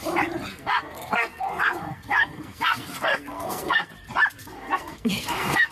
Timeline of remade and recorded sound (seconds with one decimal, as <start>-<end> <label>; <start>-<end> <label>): 0.0-0.5 recorded; 0.5-3.9 remade; 3.9-4.4 recorded; 4.4-5.7 remade